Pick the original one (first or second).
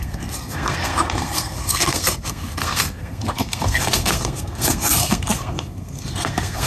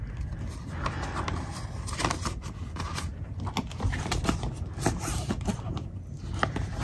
second